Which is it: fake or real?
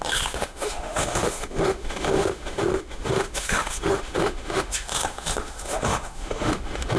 fake